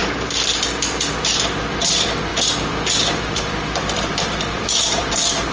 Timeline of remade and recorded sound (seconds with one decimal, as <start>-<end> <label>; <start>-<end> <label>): 0.0-0.5 remade; 0.5-2.3 recorded; 2.3-5.1 remade; 5.1-5.5 recorded